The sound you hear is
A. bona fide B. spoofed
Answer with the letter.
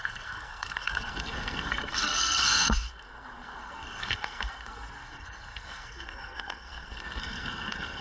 B